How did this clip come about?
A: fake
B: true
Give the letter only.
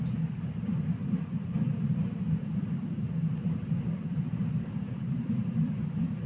A